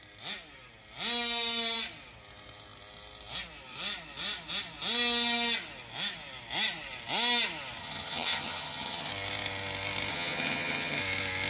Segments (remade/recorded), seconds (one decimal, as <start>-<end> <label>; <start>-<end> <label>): 0.0-7.8 recorded; 7.8-9.1 remade; 9.1-10.1 recorded; 10.1-11.0 remade; 11.0-11.5 recorded